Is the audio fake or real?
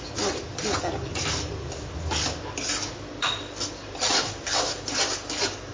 real